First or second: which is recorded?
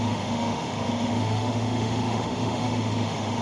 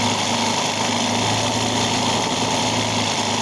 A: second